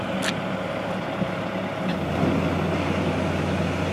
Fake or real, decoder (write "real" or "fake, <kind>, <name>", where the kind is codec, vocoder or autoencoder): real